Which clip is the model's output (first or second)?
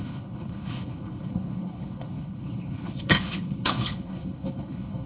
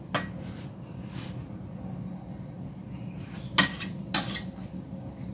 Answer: first